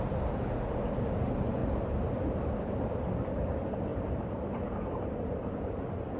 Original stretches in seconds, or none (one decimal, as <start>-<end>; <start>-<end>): 0.0-1.6; 2.9-3.9; 5.7-6.2